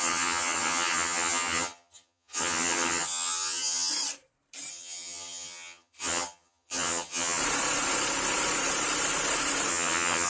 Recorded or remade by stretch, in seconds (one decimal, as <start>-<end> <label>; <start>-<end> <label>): 0.0-3.9 remade; 3.9-4.7 recorded; 4.7-7.4 remade; 7.4-9.7 recorded; 9.7-10.3 remade